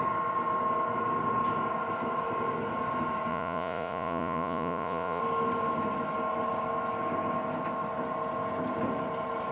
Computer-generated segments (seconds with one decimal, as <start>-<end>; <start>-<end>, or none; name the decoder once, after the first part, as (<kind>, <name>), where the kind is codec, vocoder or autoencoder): 3.3-5.2 (vocoder, Vocos)